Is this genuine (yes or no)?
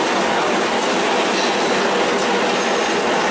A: yes